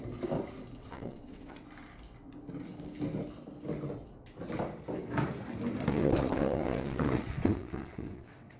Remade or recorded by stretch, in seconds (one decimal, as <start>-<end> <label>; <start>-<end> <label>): 0.0-0.8 recorded; 0.8-1.6 remade; 1.6-5.9 recorded; 5.9-8.6 remade